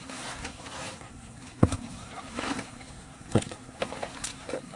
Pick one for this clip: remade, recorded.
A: remade